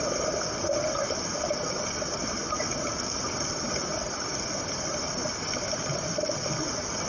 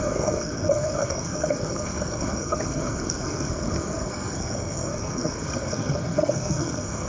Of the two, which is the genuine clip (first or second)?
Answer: first